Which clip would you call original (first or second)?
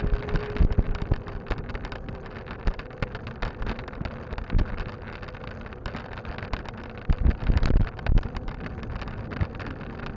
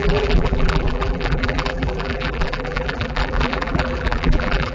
first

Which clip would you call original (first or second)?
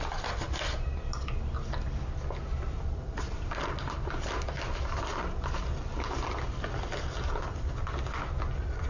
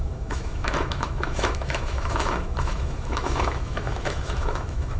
first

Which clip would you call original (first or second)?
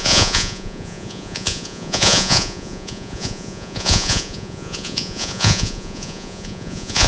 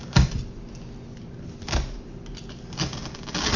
second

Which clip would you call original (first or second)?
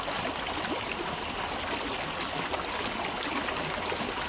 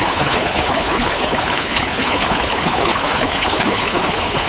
first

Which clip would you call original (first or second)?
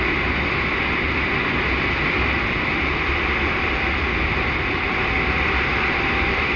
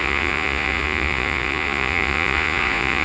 first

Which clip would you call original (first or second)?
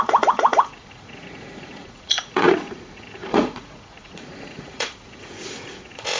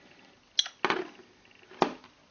second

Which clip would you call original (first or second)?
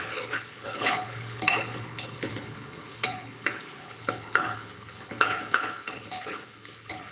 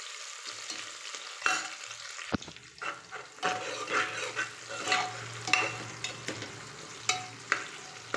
second